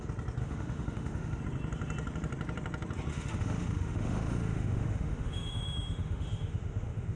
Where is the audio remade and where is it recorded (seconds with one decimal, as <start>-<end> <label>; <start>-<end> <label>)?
0.0-0.4 recorded; 0.4-1.4 remade; 1.4-3.1 recorded; 3.1-7.2 remade